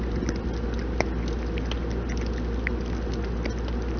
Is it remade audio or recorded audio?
recorded